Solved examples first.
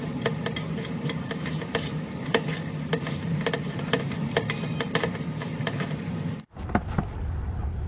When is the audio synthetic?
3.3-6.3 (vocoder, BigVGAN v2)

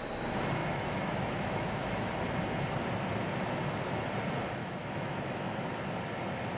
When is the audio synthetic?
0.6-2.1 (autoencoder, DAC-VAE); 4.6-5.5

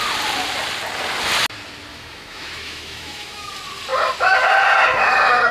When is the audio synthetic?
1.9-3.5 (autoencoder, DAC-VAE)

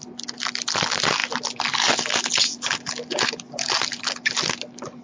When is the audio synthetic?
none

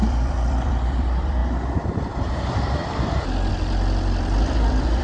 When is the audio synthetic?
0.0-1.4 (vocoder, BigVGAN v2); 2.3-2.8; 3.5-5.0

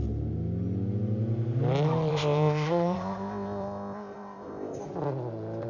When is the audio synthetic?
2.1-4.8 (codec, ZipCodec)

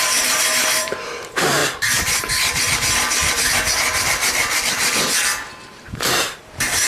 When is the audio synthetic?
0.0-1.6 (vocoder, BigVGAN v2); 2.2-3.2; 4.0-4.4; 5.7-6.9

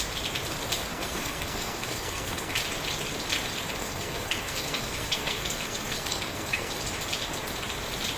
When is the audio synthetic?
0.9-2.5 (codec, SNAC); 3.8-6.8